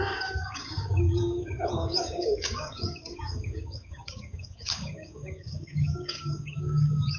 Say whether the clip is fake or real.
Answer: fake